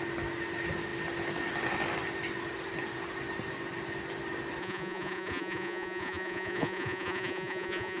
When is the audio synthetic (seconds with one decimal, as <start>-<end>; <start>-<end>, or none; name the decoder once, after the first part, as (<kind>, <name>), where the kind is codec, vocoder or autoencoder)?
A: 4.6-8.0 (vocoder, Vocos)